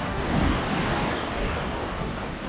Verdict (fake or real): fake